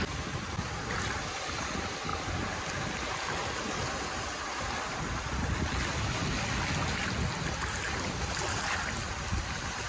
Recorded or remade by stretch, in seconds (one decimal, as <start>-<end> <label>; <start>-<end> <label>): 0.0-9.9 recorded